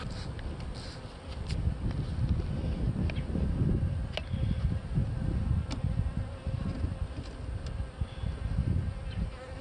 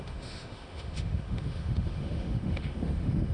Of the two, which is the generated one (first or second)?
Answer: second